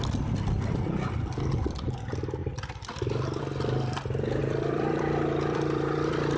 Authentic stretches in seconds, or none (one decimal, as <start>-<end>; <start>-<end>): 0.0-2.4; 3.4-4.4

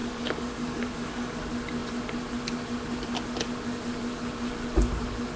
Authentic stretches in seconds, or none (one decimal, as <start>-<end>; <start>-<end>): 1.4-5.4